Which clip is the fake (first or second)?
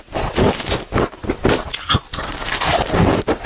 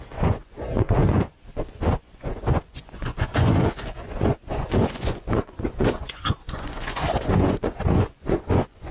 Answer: second